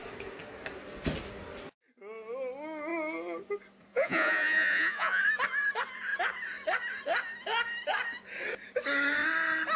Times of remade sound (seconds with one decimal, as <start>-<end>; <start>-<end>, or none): 3.9-5.2